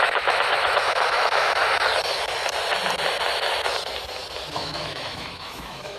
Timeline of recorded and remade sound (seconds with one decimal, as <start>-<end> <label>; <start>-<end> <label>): 0.0-1.6 remade; 1.6-4.5 recorded; 4.5-6.0 remade